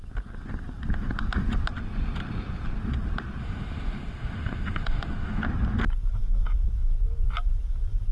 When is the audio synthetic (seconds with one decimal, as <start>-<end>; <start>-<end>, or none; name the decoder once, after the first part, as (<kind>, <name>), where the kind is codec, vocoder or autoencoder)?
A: 3.4-5.4 (autoencoder, DAC-VAE)